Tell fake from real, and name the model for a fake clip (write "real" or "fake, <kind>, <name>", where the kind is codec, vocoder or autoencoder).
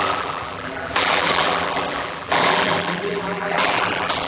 fake, vocoder, BigVGAN v2